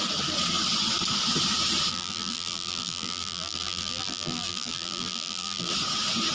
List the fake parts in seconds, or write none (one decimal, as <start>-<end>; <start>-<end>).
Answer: 1.9-5.7

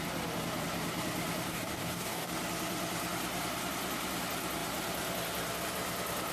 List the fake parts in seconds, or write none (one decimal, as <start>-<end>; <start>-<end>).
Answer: 1.5-2.3

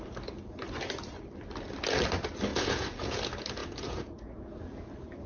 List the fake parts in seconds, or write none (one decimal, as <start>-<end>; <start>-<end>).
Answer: 2.5-3.2; 3.6-4.6

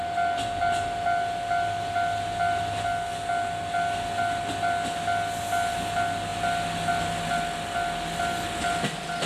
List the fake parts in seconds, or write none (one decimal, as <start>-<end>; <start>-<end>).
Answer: none

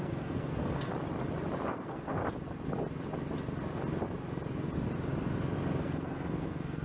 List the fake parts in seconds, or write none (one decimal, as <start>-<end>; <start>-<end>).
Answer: 0.0-0.9; 1.7-2.2; 5.8-6.8

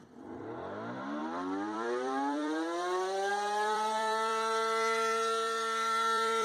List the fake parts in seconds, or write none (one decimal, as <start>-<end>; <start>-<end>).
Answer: 0.0-6.4

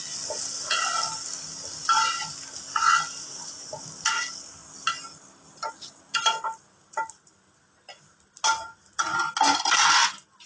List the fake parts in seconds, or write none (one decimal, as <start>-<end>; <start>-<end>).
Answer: 3.2-3.8

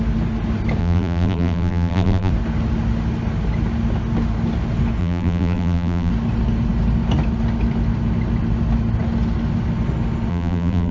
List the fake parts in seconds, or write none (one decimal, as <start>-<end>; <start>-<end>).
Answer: 0.8-2.3; 5.0-6.1; 10.3-10.9